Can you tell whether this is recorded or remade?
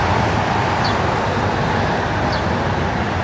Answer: recorded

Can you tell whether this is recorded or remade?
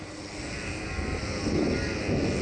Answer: recorded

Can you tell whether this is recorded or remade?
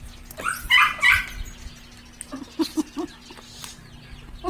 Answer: recorded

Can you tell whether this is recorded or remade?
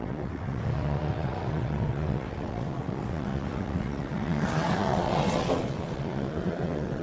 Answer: remade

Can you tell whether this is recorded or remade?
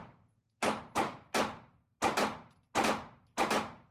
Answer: recorded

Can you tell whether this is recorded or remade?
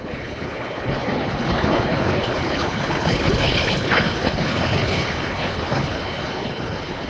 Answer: remade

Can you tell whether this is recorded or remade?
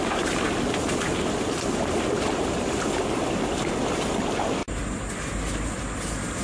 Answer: recorded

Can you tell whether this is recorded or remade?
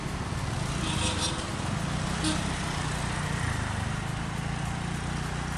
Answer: recorded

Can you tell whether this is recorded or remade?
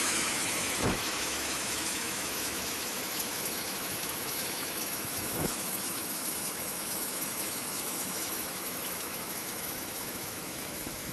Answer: remade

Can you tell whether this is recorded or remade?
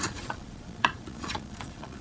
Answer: remade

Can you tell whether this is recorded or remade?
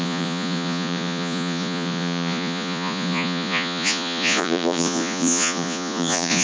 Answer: remade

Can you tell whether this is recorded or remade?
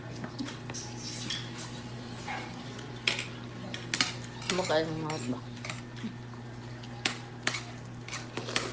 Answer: recorded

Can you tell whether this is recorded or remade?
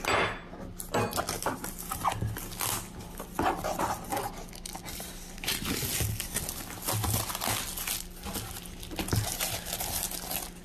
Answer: recorded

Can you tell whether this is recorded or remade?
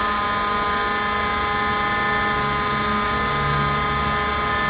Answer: recorded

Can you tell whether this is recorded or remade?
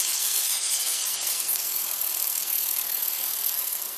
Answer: remade